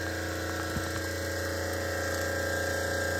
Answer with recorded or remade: recorded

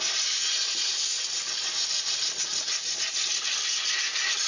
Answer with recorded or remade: recorded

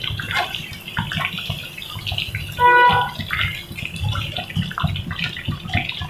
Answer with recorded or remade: recorded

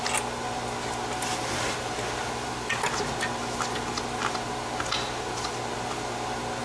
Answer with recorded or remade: recorded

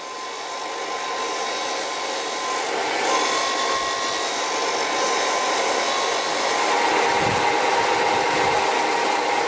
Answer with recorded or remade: recorded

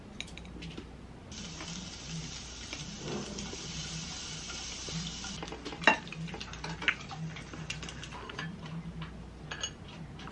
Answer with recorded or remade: recorded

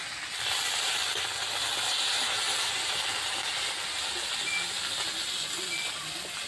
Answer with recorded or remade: recorded